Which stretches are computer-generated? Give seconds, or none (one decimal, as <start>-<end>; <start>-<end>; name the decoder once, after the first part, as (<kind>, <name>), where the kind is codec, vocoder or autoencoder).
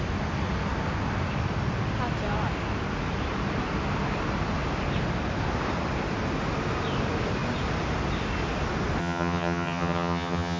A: 9.0-10.6 (vocoder, HiFi-GAN)